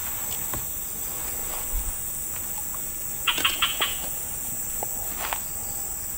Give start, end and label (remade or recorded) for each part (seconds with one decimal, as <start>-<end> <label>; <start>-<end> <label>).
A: 0.0-1.4 recorded; 1.4-2.2 remade; 2.2-2.7 recorded; 2.7-4.8 remade; 4.8-6.2 recorded